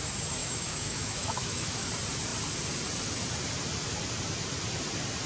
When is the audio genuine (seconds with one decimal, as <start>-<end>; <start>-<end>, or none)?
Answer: 0.0-0.4; 1.9-5.3